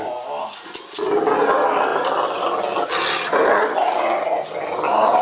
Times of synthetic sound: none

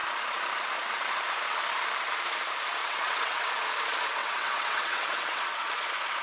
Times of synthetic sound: 2.8-3.5; 4.2-5.4

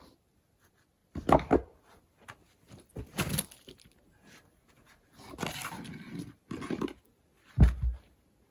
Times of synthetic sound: none

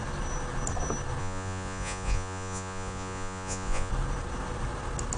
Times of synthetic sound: 1.2-3.9

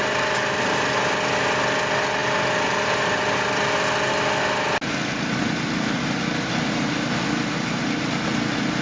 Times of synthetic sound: none

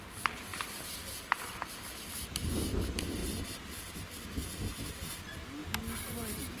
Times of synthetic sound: none